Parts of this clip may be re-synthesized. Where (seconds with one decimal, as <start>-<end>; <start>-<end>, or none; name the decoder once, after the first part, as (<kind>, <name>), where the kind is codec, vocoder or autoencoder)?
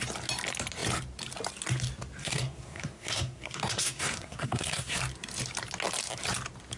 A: 2.2-5.0 (codec, SNAC)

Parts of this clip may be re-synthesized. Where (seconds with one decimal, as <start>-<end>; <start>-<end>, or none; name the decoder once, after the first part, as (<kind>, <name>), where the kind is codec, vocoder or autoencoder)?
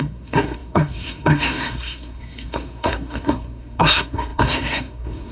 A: 0.0-5.3 (codec, SNAC)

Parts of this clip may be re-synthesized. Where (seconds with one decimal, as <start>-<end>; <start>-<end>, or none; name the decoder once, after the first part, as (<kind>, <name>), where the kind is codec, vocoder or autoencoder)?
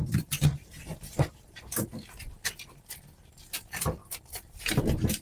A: 0.0-1.9 (vocoder, BigVGAN v2); 3.3-5.2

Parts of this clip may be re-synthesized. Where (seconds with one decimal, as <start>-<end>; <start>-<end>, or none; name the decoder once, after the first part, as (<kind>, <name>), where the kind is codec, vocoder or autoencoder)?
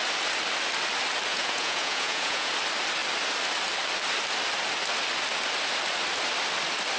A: 1.3-2.5 (vocoder, Vocos)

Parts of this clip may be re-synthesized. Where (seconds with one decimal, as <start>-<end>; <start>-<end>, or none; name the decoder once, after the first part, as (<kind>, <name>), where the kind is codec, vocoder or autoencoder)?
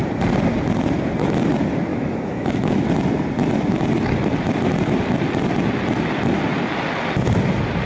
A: 1.9-2.9 (autoencoder, DAC-VAE)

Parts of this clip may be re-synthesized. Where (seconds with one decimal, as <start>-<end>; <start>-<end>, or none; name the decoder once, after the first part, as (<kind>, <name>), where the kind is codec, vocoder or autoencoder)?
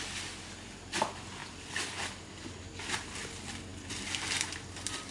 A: none